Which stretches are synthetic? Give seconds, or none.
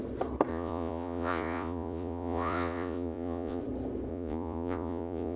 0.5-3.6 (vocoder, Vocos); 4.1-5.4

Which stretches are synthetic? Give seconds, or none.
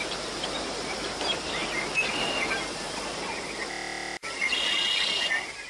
none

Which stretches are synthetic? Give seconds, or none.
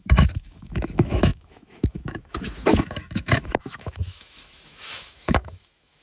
0.0-6.0 (autoencoder, DAC-VAE)